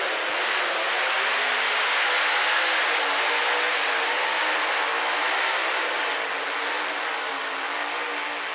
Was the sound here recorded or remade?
recorded